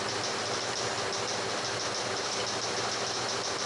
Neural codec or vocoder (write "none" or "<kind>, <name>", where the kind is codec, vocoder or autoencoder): none